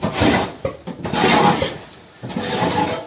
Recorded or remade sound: recorded